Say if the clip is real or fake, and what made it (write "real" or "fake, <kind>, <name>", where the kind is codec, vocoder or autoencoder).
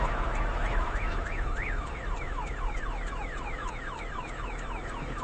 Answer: fake, autoencoder, DAC-VAE